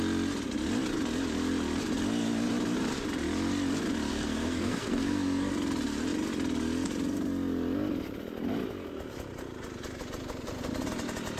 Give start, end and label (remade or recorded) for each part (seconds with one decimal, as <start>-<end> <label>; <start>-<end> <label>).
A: 0.0-4.1 recorded; 4.1-5.5 remade; 5.5-11.4 recorded